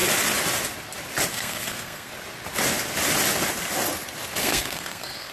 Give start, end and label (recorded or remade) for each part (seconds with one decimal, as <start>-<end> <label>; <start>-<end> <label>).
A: 0.0-1.3 recorded; 1.3-2.1 remade; 2.1-4.4 recorded; 4.4-5.3 remade